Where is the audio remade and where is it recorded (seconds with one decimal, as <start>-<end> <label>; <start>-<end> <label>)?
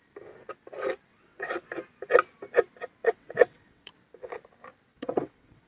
0.0-1.1 recorded; 1.1-1.7 remade; 1.7-3.0 recorded; 3.0-3.9 remade; 3.9-4.9 recorded; 4.9-5.7 remade